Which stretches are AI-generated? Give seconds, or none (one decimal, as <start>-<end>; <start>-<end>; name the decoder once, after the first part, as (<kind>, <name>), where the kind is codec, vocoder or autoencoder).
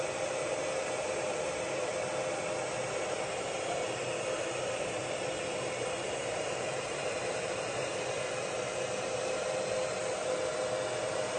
0.0-1.9 (vocoder, BigVGAN v2); 4.6-5.0; 5.6-7.9; 11.0-11.4